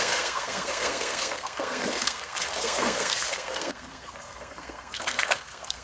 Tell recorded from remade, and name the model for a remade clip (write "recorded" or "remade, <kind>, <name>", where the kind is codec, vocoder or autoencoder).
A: remade, codec, SNAC